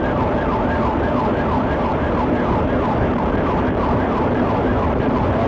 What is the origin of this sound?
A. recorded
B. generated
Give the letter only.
A